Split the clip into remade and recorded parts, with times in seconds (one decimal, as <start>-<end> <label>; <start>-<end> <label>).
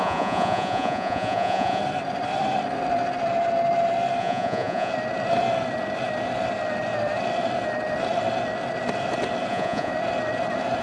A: 0.0-1.8 remade; 1.8-4.2 recorded; 4.2-4.9 remade; 4.9-9.5 recorded; 9.5-9.9 remade; 9.9-10.8 recorded